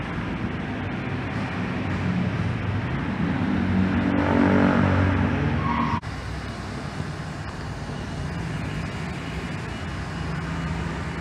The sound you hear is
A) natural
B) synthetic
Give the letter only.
A